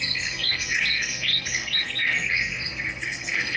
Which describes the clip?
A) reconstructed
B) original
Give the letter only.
A